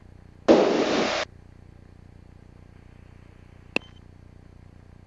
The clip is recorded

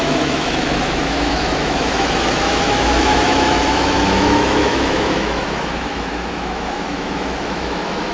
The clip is remade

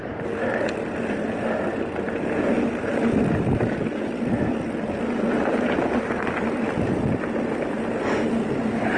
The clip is recorded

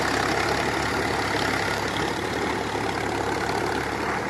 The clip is recorded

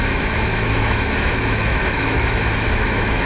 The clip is remade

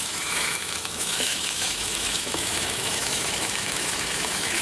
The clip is remade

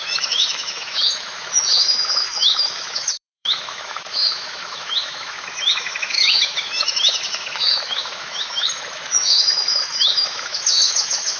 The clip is remade